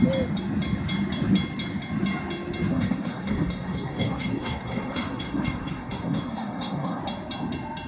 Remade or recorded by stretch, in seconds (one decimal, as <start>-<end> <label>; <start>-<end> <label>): 0.0-2.7 recorded; 2.7-7.0 remade; 7.0-7.9 recorded